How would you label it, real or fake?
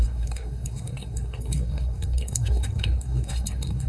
fake